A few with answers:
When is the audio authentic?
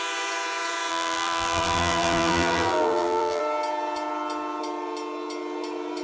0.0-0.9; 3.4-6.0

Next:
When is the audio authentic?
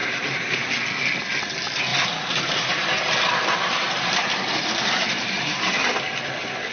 0.7-1.9; 5.6-6.7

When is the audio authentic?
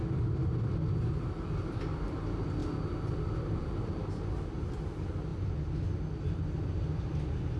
0.0-7.6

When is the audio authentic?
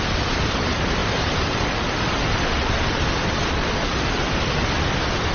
0.0-1.0; 4.2-5.3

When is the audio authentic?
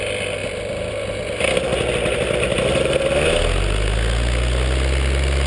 0.0-0.4; 3.0-5.5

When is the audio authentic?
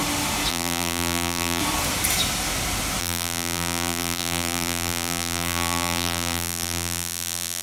0.0-0.5; 1.6-3.0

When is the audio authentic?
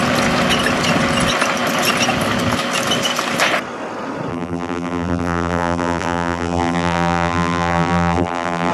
0.0-4.3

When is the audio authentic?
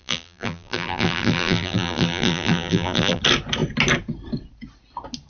3.2-5.3